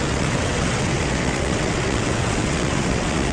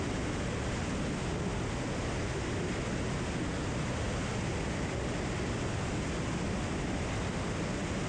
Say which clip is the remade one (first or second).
first